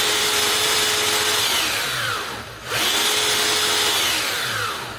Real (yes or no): no